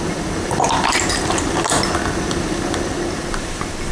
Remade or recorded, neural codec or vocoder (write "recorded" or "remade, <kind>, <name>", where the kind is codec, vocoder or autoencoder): recorded